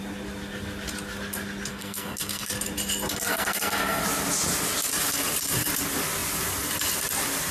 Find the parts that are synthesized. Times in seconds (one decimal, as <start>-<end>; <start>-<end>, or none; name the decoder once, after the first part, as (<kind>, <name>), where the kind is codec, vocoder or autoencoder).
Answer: 1.7-2.5 (codec, SNAC); 3.3-4.0